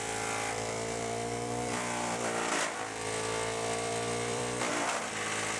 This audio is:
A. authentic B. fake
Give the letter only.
B